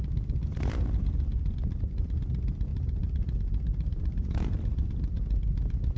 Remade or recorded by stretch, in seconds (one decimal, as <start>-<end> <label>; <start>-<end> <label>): 0.0-2.7 recorded; 2.7-4.5 remade; 4.5-6.0 recorded